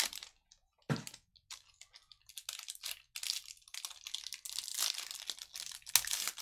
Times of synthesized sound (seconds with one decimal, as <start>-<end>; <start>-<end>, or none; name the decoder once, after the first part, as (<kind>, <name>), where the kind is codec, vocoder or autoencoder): none